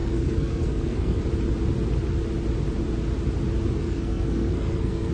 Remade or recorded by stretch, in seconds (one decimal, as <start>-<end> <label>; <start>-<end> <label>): 0.0-1.2 remade; 1.2-3.8 recorded; 3.8-5.1 remade